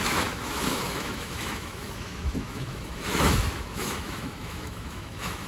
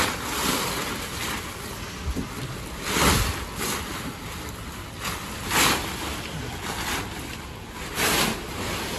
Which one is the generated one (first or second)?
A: first